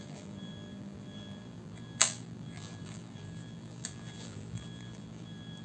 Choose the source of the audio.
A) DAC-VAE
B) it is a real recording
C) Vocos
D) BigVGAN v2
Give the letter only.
D